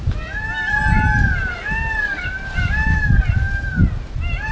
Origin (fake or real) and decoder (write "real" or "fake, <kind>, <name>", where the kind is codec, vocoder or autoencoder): real